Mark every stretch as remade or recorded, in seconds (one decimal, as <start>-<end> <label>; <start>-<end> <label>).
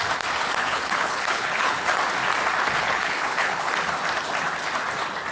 0.0-0.6 recorded; 0.6-2.0 remade; 2.0-2.8 recorded; 2.8-3.7 remade; 3.7-5.3 recorded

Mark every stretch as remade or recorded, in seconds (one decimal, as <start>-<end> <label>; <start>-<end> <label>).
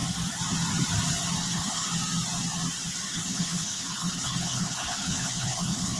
0.0-1.5 recorded; 1.5-1.9 remade; 1.9-3.1 recorded; 3.1-6.0 remade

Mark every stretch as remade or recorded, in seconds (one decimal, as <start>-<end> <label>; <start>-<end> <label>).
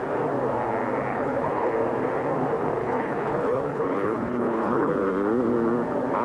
0.0-1.1 recorded; 1.1-1.7 remade; 1.7-2.8 recorded; 2.8-4.9 remade; 4.9-6.2 recorded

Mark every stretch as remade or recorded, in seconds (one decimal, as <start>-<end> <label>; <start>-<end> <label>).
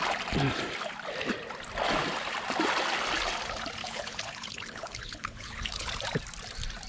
0.0-3.8 recorded; 3.8-5.9 remade; 5.9-6.9 recorded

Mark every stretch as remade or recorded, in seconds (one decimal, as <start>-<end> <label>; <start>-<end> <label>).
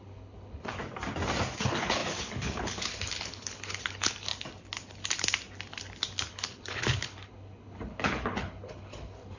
0.0-0.8 remade; 0.8-1.6 recorded; 1.6-4.3 remade; 4.3-6.3 recorded; 6.3-9.4 remade